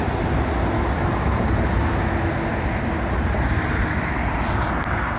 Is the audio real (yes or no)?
yes